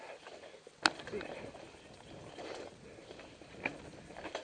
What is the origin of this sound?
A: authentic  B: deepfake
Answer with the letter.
A